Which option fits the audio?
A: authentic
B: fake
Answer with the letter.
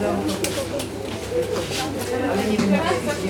A